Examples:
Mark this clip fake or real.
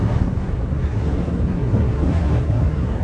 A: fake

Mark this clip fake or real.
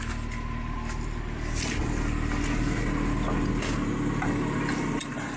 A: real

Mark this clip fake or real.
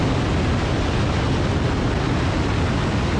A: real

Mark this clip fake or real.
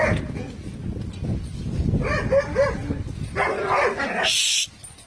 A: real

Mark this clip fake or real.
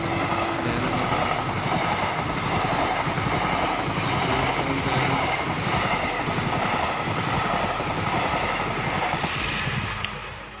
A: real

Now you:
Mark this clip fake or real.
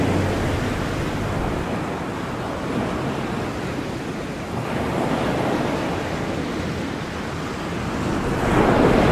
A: real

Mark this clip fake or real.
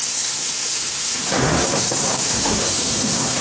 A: fake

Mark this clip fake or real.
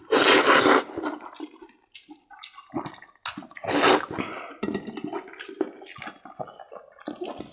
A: real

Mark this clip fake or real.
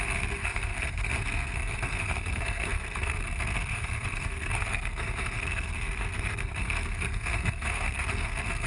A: fake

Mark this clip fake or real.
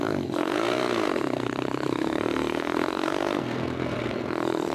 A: fake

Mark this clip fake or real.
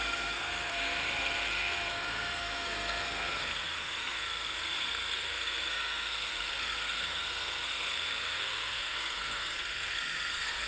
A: fake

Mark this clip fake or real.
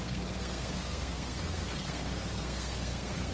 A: fake